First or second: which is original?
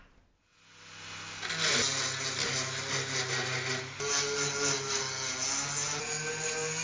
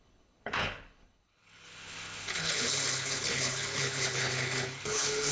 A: first